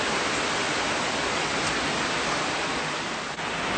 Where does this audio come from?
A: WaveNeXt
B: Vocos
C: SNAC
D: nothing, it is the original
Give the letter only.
D